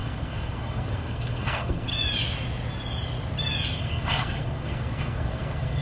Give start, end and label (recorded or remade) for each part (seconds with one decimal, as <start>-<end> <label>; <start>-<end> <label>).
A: 0.0-1.9 remade; 1.9-3.8 recorded; 3.8-5.8 remade

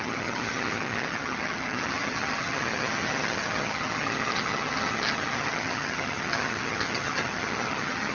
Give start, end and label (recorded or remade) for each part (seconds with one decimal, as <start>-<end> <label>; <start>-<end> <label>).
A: 0.0-8.1 remade

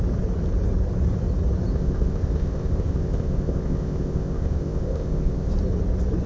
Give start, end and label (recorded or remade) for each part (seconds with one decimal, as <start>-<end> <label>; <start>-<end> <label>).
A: 0.0-1.7 recorded; 1.7-5.5 remade; 5.5-6.3 recorded

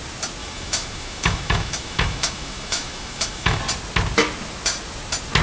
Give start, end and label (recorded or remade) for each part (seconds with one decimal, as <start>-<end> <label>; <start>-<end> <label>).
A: 0.0-0.4 recorded; 0.4-3.6 remade; 3.6-5.4 recorded

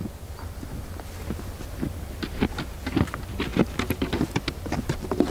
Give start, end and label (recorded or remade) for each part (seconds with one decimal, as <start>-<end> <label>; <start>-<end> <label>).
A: 0.0-5.3 recorded

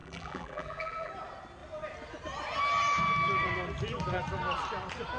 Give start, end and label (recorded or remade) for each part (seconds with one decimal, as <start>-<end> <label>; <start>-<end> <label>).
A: 0.0-1.1 remade; 1.1-5.2 recorded